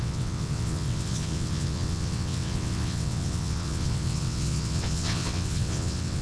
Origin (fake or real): fake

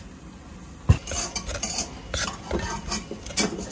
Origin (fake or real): real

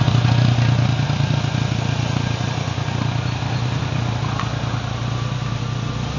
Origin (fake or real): real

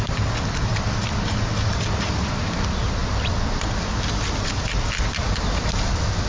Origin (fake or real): real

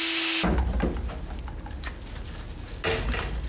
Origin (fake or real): real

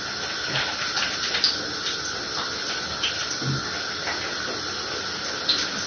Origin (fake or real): real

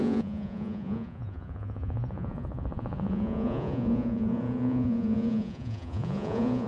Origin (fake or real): fake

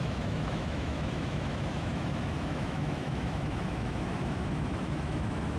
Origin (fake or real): fake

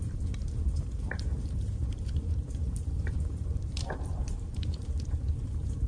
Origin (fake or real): fake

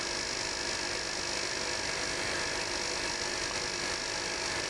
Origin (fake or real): real